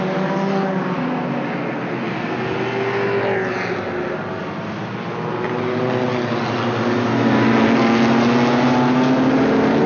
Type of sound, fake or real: real